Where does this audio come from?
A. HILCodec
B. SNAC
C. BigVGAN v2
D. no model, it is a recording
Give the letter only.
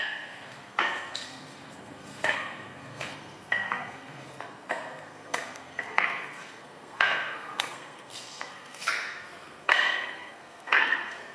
B